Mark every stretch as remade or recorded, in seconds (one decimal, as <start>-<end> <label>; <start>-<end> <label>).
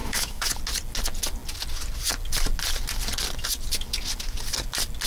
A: 0.0-0.5 remade; 0.5-5.1 recorded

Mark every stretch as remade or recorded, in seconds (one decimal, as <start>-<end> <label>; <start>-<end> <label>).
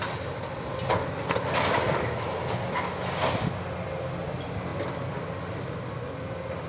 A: 0.0-6.7 recorded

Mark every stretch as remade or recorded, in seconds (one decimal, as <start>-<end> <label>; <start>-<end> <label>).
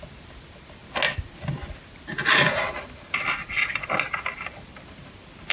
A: 0.0-3.4 recorded; 3.4-3.9 remade; 3.9-5.5 recorded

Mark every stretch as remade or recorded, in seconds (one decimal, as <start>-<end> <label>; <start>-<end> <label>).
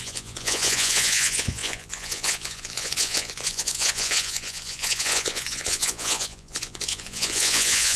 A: 0.0-8.0 remade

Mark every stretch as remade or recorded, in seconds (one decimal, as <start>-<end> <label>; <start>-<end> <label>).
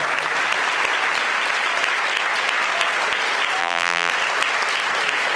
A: 0.0-3.6 recorded; 3.6-4.1 remade; 4.1-5.4 recorded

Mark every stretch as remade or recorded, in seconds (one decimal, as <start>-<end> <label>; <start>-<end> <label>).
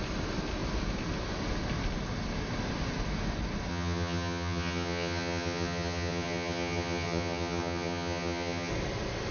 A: 0.0-3.7 recorded; 3.7-8.7 remade; 8.7-9.3 recorded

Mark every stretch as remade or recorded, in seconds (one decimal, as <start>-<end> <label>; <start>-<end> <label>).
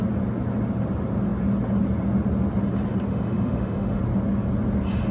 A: 0.0-3.1 recorded; 3.1-4.0 remade; 4.0-5.1 recorded